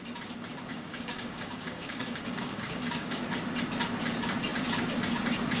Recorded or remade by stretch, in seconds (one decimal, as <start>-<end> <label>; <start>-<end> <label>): 0.0-0.7 recorded; 0.7-3.2 remade; 3.2-5.6 recorded